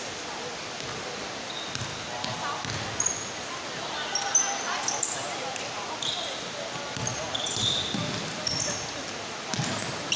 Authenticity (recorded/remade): recorded